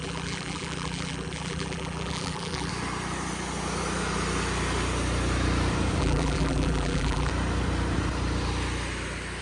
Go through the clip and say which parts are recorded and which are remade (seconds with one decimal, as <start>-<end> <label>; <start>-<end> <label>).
0.0-2.7 remade; 2.7-6.0 recorded; 6.0-7.3 remade; 7.3-9.4 recorded